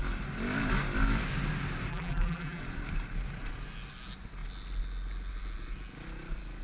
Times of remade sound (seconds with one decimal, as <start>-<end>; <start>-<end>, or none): 1.9-2.6